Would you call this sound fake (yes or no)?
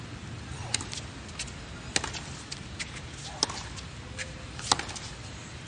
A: no